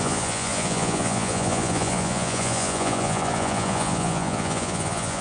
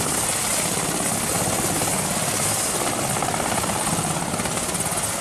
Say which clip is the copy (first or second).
first